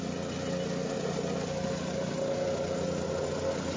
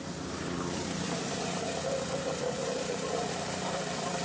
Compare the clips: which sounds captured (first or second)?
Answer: first